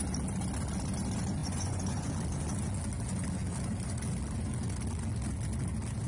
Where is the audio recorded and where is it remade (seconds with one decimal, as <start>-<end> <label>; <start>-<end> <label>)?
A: 0.0-1.4 recorded; 1.4-2.1 remade; 2.1-6.1 recorded